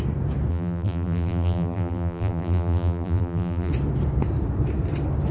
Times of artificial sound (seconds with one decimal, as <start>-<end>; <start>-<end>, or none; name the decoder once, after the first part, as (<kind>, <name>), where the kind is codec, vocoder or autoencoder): 0.5-3.7 (vocoder, BigVGAN v2)